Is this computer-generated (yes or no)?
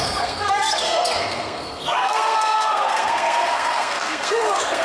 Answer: yes